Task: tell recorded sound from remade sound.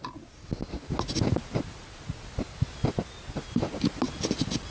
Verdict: recorded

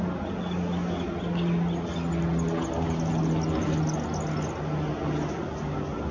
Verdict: recorded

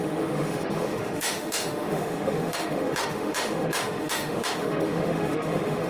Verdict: remade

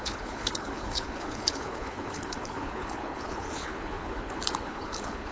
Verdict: remade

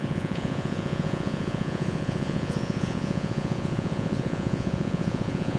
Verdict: remade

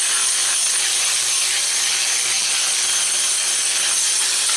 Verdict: recorded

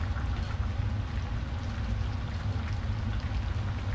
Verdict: recorded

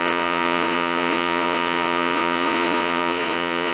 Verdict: remade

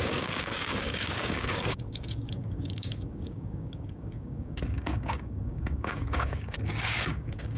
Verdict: remade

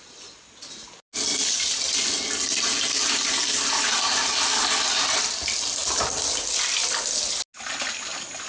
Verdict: recorded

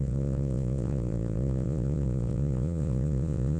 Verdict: remade